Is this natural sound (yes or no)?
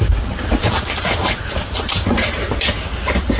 yes